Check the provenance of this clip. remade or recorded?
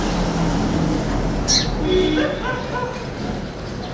recorded